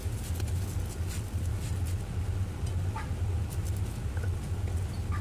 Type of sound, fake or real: real